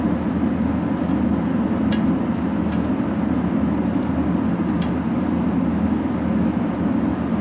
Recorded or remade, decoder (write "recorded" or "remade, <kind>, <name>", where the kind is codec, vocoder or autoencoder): recorded